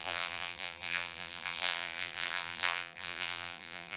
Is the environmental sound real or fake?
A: fake